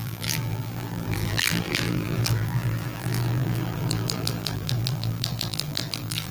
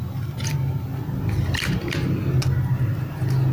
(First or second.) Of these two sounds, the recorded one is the second